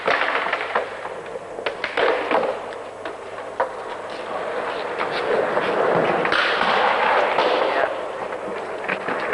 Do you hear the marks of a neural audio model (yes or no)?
no